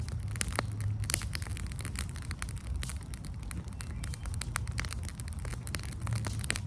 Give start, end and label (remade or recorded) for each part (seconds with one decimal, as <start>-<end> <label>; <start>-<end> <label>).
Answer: 0.0-6.7 recorded